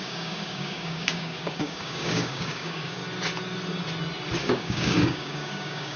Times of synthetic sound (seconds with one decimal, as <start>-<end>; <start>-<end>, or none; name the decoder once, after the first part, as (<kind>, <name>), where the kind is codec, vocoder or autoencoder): 0.0-3.0 (codec, DAC); 4.4-6.0